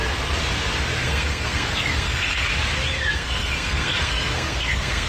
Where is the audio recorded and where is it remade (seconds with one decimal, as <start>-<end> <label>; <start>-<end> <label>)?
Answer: 0.0-1.0 recorded; 1.0-2.5 remade; 2.5-3.1 recorded; 3.1-5.1 remade